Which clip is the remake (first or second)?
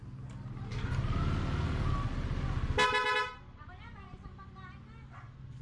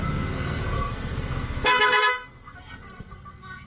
second